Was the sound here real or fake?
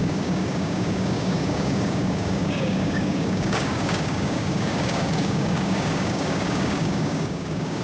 fake